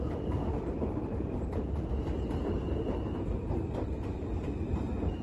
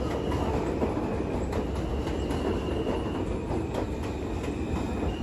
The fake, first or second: first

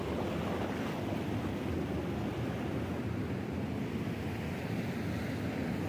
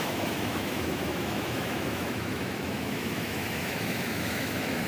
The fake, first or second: second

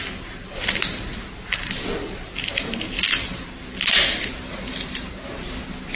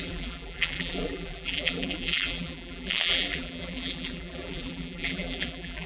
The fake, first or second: second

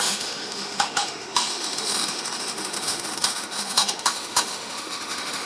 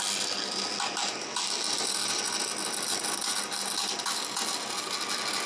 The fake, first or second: first